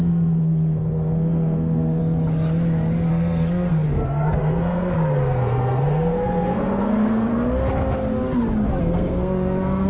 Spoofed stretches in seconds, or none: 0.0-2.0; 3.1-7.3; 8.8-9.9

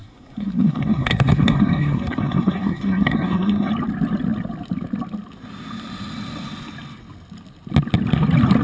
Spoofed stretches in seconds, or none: 0.0-3.7

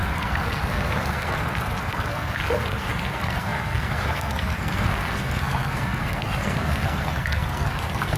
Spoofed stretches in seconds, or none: 0.0-8.2

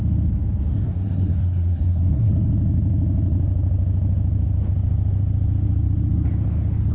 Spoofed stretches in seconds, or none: 0.7-2.3

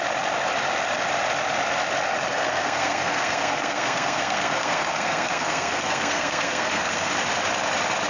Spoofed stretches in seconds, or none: 2.3-7.1